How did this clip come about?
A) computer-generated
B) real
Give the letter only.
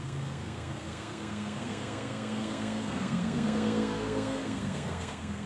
A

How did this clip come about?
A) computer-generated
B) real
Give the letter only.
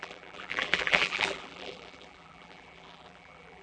A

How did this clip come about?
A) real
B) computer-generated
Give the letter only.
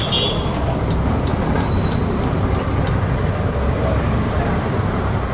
A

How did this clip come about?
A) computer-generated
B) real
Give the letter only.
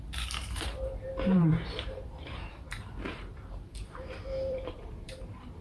A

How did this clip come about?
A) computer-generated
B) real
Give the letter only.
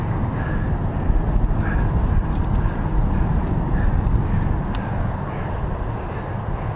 B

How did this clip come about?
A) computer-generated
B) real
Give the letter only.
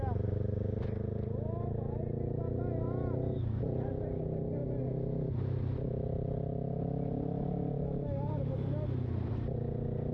B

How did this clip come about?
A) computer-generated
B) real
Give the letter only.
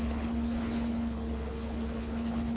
A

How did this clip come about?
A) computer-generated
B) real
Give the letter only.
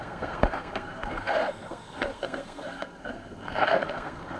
A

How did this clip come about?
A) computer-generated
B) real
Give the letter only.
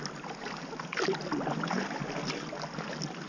B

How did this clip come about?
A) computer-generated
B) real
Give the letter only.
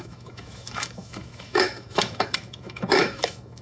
A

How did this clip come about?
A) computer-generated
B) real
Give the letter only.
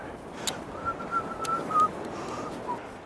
B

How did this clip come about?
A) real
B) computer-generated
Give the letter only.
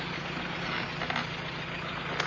A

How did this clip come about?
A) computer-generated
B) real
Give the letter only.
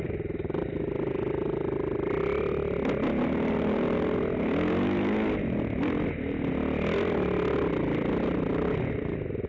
B